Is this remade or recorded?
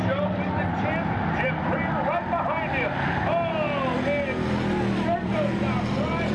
recorded